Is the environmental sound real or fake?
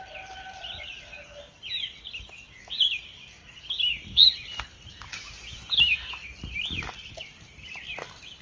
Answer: real